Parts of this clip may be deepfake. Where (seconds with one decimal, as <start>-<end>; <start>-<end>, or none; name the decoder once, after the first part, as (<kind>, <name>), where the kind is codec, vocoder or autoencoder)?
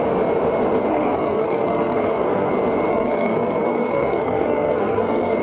0.9-2.5 (codec, SNAC); 2.9-5.4